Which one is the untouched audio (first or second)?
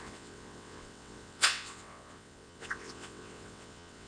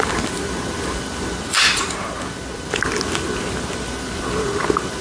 second